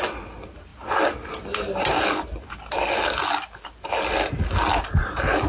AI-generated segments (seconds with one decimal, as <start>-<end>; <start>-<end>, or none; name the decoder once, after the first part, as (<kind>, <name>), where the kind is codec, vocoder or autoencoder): none